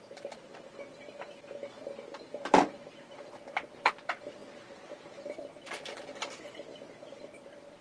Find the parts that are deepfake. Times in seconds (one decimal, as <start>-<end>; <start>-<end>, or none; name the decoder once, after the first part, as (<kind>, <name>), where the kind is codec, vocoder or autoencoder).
none